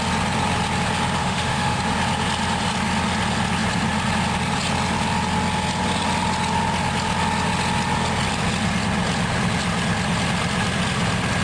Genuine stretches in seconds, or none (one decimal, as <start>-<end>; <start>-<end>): 0.0-1.2; 1.8-11.4